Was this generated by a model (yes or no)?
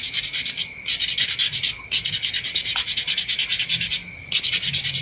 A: no